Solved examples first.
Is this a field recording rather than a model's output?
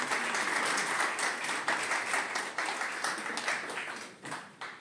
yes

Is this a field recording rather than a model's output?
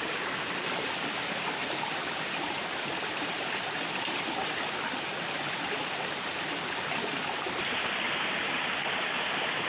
yes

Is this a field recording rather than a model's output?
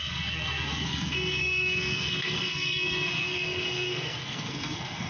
no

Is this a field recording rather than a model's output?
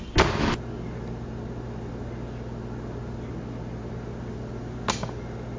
yes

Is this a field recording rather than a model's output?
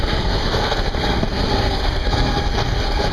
no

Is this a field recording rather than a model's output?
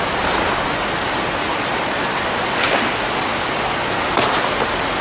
yes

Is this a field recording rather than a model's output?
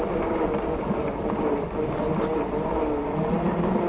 yes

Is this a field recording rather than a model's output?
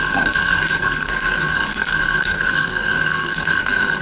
no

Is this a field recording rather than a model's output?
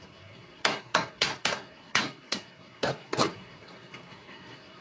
no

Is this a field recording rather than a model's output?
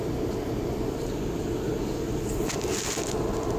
yes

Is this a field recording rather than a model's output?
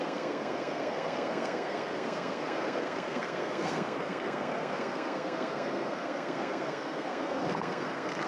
no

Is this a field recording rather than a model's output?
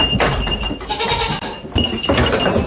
yes